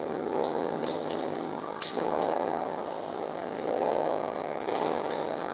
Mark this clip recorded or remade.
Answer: remade